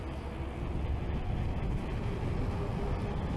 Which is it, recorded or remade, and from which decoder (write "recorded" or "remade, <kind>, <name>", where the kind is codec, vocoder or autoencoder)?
recorded